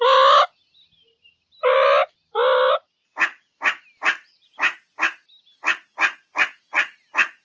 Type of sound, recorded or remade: recorded